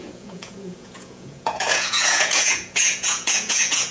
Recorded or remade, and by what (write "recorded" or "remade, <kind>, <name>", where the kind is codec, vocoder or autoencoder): remade, vocoder, Vocos